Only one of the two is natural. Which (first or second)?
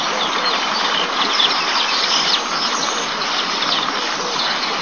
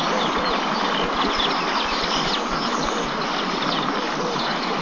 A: first